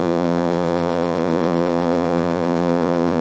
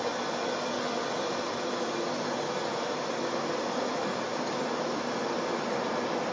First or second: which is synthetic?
first